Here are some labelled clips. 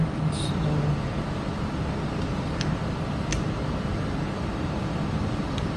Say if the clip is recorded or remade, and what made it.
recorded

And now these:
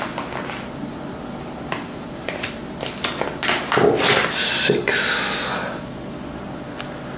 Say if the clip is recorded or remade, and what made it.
recorded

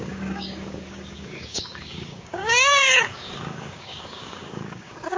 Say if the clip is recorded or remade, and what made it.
remade, codec, DAC